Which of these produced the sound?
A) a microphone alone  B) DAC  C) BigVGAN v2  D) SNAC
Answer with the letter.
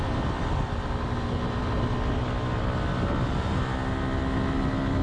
A